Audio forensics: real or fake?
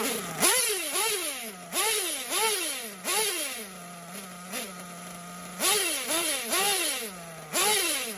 real